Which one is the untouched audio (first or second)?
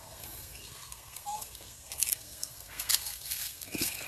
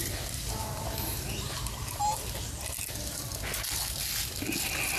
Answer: second